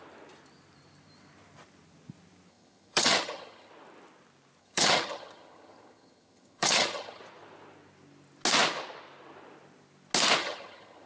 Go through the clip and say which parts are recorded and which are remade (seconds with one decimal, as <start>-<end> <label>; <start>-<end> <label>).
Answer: 0.0-2.5 recorded; 2.5-3.7 remade; 3.7-4.6 recorded; 4.6-7.2 remade; 7.2-10.4 recorded; 10.4-11.1 remade